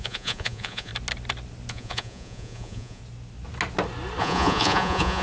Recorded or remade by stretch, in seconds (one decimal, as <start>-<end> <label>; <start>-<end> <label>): 0.0-0.9 remade; 0.9-1.7 recorded; 1.7-3.0 remade; 3.0-4.2 recorded; 4.2-5.2 remade

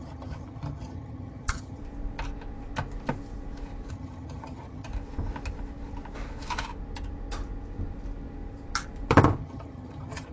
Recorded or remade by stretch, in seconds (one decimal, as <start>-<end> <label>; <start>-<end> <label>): 0.0-1.8 remade; 1.8-3.9 recorded; 3.9-4.9 remade; 4.9-9.4 recorded; 9.4-10.3 remade

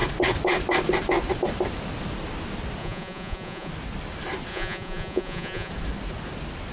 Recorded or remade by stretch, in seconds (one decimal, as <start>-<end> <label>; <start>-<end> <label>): 0.0-2.8 recorded; 2.8-3.7 remade; 3.7-4.5 recorded; 4.5-5.7 remade; 5.7-6.7 recorded

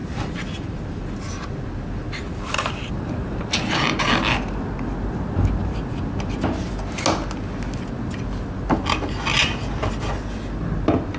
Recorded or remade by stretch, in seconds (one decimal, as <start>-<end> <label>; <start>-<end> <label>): 0.0-1.1 remade; 1.1-2.2 recorded; 2.2-3.7 remade; 3.7-11.2 recorded

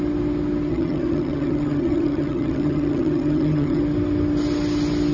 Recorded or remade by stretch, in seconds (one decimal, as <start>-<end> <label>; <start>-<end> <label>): 0.0-0.7 recorded; 0.7-3.8 remade; 3.8-5.1 recorded

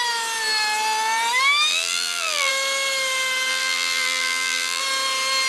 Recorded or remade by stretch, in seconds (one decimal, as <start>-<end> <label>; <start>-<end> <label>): 0.0-1.7 recorded; 1.7-2.5 remade; 2.5-3.5 recorded; 3.5-4.8 remade; 4.8-5.5 recorded

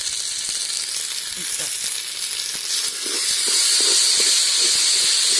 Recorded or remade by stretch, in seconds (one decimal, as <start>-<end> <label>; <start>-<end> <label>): 0.0-5.4 recorded